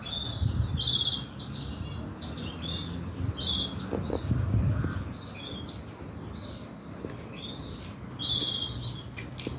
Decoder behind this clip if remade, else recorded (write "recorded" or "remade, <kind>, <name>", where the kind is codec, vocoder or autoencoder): recorded